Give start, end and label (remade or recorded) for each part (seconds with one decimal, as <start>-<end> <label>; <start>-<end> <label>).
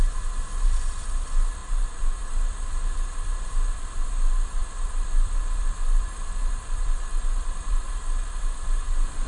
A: 0.0-1.6 recorded; 1.6-2.3 remade; 2.3-4.6 recorded; 4.6-7.9 remade; 7.9-9.3 recorded